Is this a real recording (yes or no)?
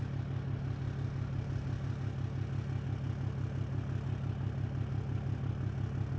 yes